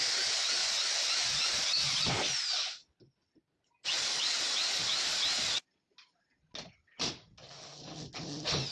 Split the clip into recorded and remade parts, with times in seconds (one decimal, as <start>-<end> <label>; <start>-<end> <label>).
0.0-8.7 recorded